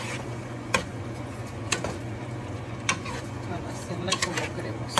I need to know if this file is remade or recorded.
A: remade